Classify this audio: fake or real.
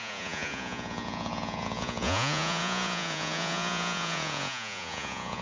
fake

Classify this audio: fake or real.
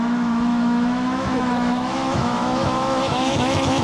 fake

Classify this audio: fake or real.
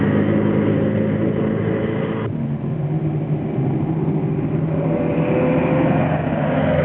real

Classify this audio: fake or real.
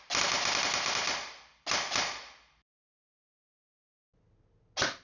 real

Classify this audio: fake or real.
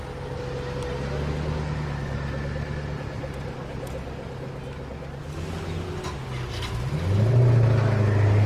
real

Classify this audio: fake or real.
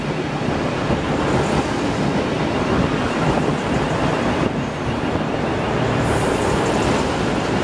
fake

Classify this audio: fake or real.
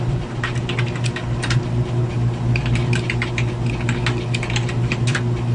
real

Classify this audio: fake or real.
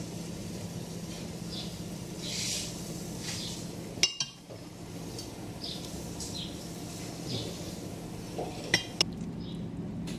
real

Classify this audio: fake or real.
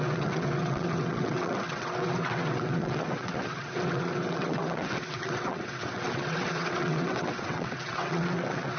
fake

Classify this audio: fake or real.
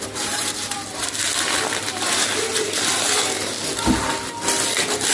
real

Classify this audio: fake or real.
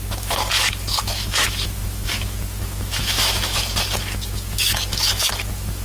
fake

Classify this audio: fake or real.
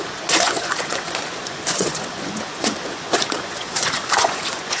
fake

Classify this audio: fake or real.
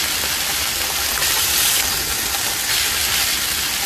real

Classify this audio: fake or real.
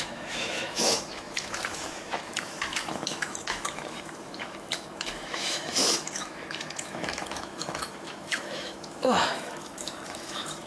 fake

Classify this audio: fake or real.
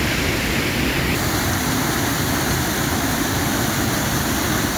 real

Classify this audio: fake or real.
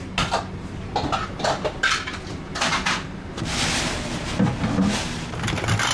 real